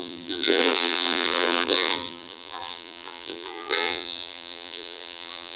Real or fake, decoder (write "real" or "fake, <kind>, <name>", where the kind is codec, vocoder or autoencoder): fake, vocoder, BigVGAN v2